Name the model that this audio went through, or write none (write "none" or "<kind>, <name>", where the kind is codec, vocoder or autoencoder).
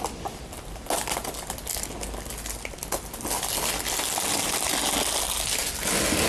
none